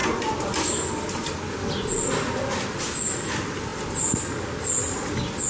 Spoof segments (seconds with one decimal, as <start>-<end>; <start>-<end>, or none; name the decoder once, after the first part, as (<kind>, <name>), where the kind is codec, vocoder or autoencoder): none